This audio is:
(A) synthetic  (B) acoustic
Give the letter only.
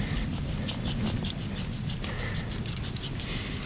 B